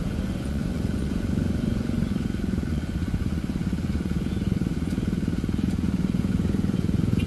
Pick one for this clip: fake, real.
fake